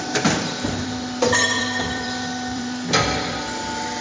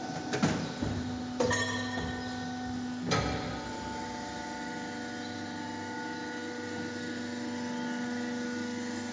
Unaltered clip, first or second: second